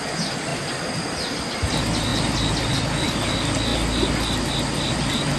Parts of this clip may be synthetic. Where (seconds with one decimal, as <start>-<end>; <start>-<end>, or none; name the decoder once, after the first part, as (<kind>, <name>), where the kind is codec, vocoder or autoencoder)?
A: none